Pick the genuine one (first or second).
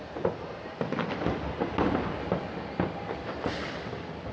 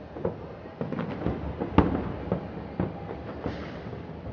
second